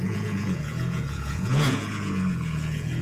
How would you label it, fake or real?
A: fake